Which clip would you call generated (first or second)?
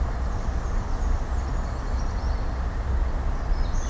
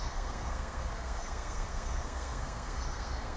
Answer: second